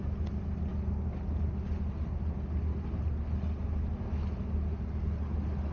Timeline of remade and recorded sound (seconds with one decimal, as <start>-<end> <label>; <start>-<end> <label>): 0.0-5.7 recorded